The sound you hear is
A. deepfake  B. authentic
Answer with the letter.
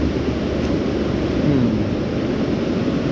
B